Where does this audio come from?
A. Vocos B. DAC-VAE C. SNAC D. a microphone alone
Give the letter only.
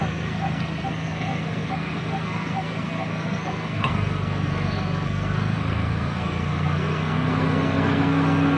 C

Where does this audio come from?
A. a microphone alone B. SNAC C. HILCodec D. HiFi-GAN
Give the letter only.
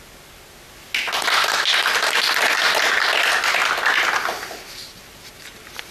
A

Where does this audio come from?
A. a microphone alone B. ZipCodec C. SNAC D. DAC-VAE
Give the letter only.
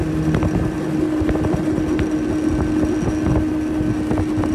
A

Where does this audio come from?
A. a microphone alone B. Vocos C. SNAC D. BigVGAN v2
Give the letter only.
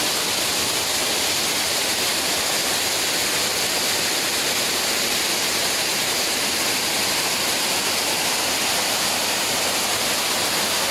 A